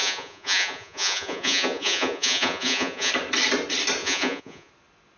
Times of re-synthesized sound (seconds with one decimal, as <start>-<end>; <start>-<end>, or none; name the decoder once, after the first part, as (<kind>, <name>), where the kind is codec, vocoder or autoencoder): 0.0-3.1 (vocoder, Vocos); 4.0-4.7